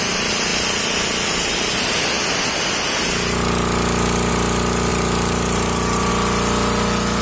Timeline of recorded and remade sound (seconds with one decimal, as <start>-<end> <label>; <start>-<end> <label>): 0.0-4.9 recorded; 4.9-6.1 remade; 6.1-7.2 recorded